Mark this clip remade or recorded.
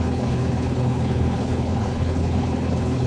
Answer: remade